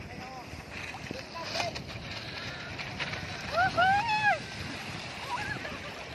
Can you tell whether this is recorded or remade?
recorded